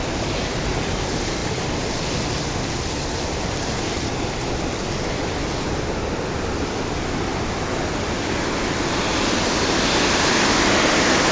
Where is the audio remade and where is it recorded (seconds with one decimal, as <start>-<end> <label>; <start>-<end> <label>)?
0.0-11.3 recorded